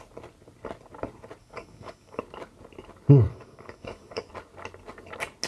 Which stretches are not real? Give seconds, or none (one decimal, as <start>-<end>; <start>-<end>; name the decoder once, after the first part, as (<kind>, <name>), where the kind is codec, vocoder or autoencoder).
1.4-2.2 (codec, DAC); 3.3-4.3